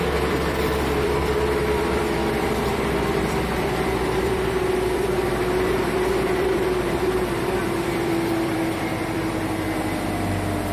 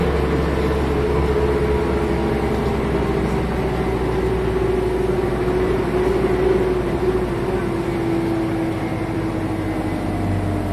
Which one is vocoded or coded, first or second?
first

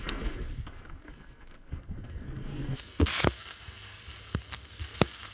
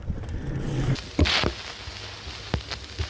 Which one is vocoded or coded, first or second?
first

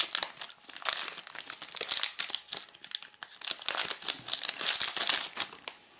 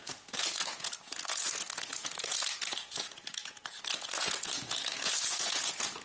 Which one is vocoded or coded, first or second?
second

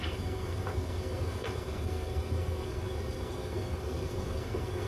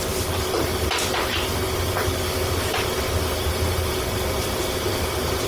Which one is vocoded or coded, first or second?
first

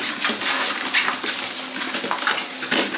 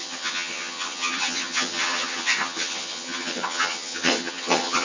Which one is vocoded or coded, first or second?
second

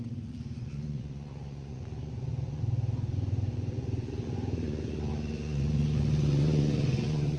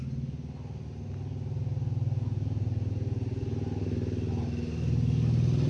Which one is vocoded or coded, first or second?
first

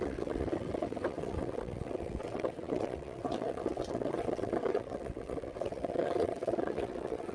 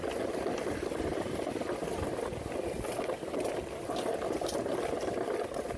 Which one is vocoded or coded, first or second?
first